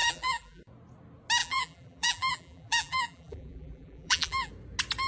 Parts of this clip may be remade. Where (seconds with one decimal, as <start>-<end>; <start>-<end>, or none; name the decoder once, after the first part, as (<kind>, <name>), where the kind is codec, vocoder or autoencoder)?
0.0-0.6 (vocoder, BigVGAN v2); 1.4-4.5